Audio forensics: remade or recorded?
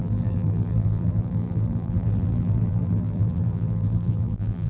remade